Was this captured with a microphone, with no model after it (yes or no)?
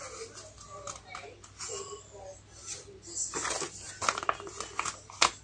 yes